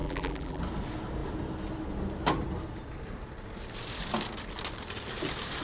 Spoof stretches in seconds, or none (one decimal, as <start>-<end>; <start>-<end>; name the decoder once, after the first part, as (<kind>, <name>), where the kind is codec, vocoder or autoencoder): 0.0-0.6 (vocoder, BigVGAN v2)

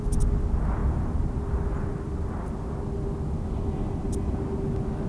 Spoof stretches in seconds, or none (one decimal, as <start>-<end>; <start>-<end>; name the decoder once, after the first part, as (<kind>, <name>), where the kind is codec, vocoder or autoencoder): 0.8-2.5 (vocoder, BigVGAN v2)